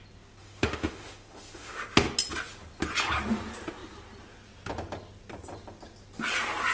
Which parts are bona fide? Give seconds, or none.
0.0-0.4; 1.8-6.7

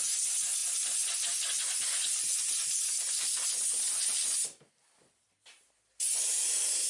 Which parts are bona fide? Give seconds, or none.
0.0-6.9